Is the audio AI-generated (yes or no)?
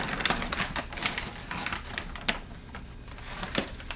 no